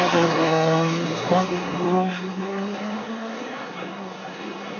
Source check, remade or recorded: remade